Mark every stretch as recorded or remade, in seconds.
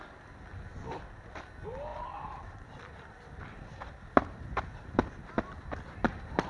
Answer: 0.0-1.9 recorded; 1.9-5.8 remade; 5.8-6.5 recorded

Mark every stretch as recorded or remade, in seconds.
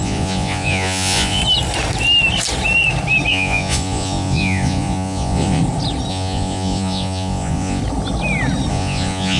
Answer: 0.0-1.4 remade; 1.4-3.3 recorded; 3.3-5.6 remade; 5.6-6.1 recorded; 6.1-7.8 remade; 7.8-8.7 recorded; 8.7-9.4 remade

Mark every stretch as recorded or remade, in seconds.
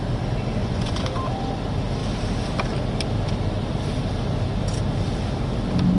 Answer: 0.0-0.6 recorded; 0.6-1.2 remade; 1.2-6.0 recorded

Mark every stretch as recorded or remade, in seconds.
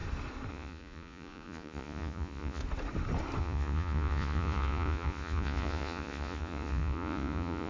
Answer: 0.0-0.5 recorded; 0.5-2.6 remade; 2.6-3.4 recorded; 3.4-7.7 remade